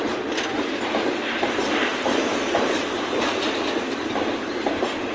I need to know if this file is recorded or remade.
remade